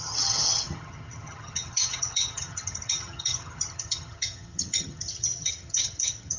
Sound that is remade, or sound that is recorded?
remade